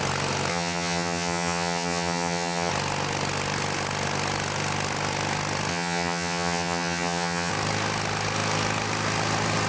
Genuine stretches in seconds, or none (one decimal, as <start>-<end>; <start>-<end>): 0.0-0.5; 2.7-5.7; 7.5-9.7